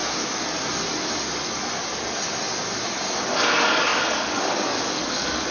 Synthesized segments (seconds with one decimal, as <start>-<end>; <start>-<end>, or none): 3.3-5.5

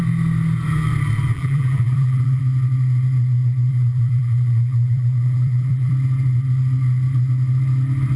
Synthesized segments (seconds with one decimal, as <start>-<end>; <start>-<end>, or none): 1.3-2.4; 3.7-5.9